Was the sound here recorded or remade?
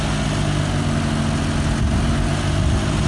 recorded